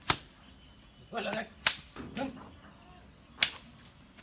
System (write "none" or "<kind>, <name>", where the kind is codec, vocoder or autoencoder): none